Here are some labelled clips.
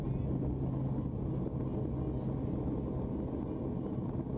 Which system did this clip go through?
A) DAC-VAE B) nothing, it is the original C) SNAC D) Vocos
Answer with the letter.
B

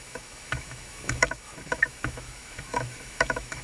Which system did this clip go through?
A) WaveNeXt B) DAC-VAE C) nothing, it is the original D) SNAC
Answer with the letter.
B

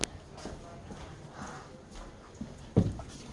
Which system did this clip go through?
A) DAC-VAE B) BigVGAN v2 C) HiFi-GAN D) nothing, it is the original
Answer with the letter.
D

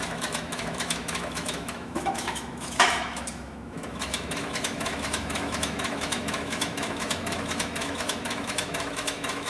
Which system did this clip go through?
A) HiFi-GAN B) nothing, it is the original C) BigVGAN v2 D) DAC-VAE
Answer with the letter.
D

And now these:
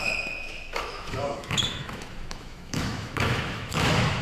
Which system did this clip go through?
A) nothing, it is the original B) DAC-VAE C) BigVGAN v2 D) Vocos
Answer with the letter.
B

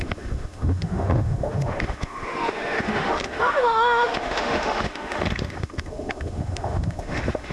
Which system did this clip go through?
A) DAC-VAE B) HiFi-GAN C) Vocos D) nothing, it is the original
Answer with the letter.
A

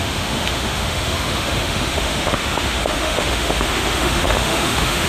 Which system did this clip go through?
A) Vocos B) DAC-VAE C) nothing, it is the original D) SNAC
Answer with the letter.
B